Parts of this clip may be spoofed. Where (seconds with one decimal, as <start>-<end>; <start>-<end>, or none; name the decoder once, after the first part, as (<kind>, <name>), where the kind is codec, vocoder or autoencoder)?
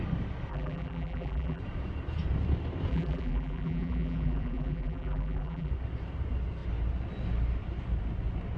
0.5-1.6 (vocoder, BigVGAN v2); 2.9-5.7